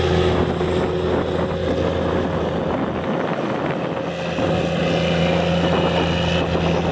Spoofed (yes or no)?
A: no